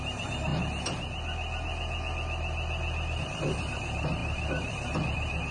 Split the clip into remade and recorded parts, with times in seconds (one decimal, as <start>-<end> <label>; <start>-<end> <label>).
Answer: 0.0-0.5 remade; 0.5-3.2 recorded; 3.2-5.5 remade